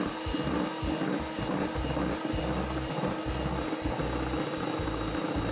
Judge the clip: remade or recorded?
recorded